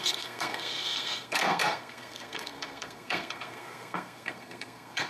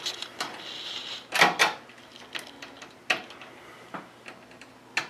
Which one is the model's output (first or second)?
first